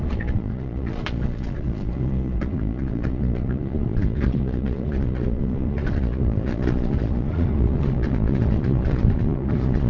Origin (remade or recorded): remade